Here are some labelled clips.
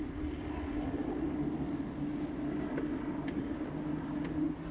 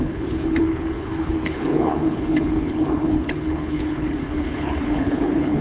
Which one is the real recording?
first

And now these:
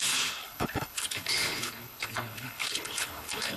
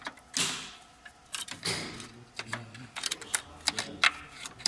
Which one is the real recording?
second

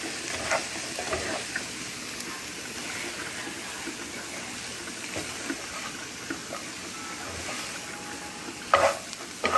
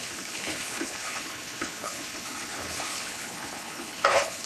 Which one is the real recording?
first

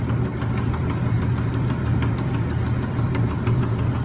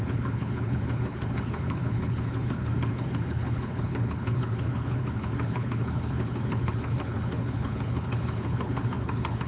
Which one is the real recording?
first